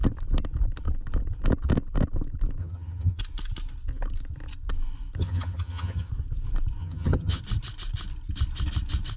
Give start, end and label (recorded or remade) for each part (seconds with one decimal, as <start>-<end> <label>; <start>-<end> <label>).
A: 0.0-2.6 recorded; 2.6-3.2 remade; 3.2-5.2 recorded; 5.2-6.1 remade; 6.1-6.8 recorded; 6.8-7.4 remade; 7.4-9.2 recorded